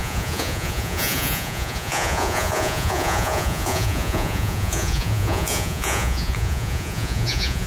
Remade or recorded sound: remade